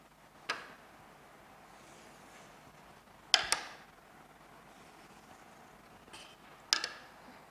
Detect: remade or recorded recorded